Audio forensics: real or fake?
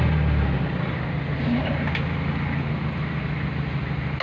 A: real